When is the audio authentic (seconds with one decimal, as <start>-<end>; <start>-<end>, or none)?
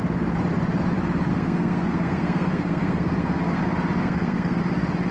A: 0.0-1.3; 3.6-4.0; 4.6-5.1